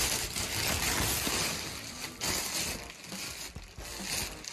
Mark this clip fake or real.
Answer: real